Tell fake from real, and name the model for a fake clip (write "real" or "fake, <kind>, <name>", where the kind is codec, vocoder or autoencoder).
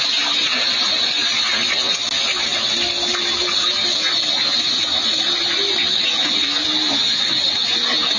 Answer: real